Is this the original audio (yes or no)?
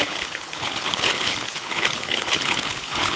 no